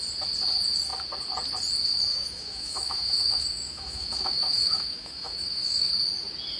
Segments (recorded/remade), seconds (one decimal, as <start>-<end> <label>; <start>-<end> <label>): 0.0-2.1 recorded; 2.1-5.9 remade; 5.9-6.6 recorded